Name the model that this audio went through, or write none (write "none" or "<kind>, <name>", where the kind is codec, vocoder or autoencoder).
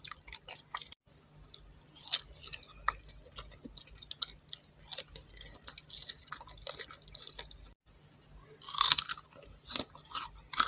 none